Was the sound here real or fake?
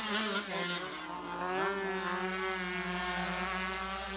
real